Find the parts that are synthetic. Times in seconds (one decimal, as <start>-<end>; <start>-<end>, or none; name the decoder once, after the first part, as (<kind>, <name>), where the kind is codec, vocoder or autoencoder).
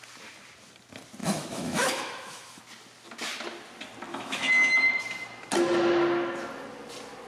1.2-2.6 (autoencoder, DAC-VAE); 4.1-4.9